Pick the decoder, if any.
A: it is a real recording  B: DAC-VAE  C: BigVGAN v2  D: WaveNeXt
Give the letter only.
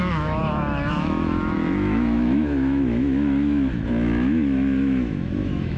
B